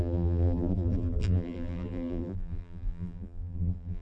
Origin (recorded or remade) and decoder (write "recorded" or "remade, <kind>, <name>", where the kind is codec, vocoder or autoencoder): remade, vocoder, BigVGAN v2